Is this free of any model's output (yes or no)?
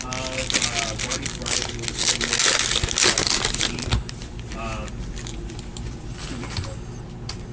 yes